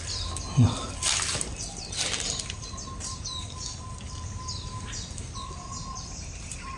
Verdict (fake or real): real